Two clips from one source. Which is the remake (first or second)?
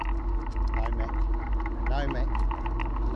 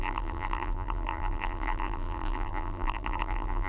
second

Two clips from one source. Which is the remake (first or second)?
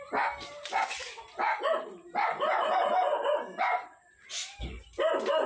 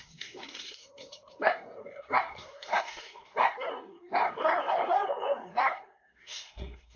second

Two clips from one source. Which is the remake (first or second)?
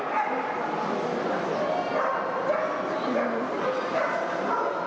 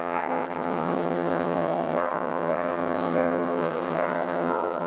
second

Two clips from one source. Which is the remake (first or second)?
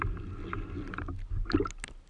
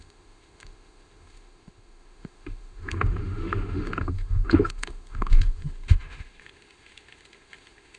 second